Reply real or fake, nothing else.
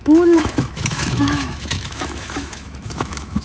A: fake